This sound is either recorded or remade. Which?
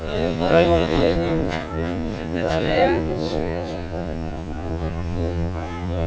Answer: remade